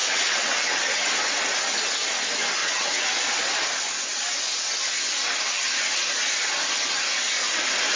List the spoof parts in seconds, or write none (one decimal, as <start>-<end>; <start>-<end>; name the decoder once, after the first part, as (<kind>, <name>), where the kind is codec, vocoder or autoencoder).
0.0-1.1 (vocoder, WaveNeXt); 2.6-3.1